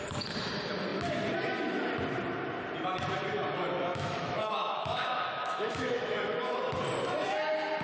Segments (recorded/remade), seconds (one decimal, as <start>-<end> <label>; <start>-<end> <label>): 0.0-3.4 recorded; 3.4-6.6 remade; 6.6-7.8 recorded